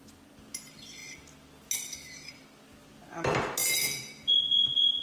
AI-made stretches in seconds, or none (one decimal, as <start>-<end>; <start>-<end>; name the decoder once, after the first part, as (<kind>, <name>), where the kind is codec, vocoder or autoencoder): none